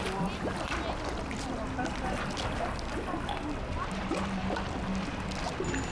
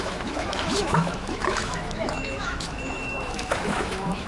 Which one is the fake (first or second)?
second